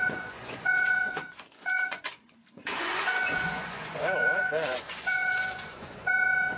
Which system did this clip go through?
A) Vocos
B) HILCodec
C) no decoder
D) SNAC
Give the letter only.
A